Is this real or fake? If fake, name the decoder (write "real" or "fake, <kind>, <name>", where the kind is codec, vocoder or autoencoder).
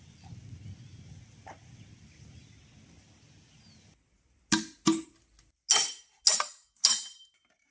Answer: real